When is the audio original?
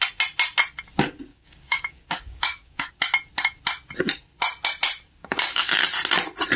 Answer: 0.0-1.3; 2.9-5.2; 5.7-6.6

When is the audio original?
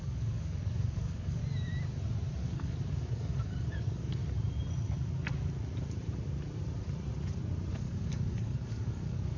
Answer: 1.4-2.4; 4.2-7.7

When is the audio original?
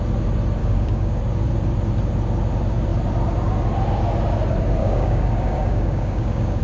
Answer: 0.0-0.6; 1.2-4.8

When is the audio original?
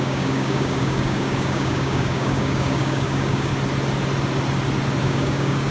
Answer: 3.5-5.0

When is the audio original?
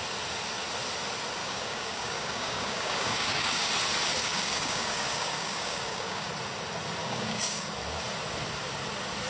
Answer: 0.0-1.4; 3.7-4.2; 6.3-7.0; 7.7-9.3